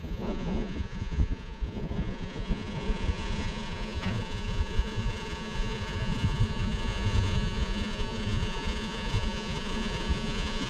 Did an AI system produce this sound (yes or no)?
yes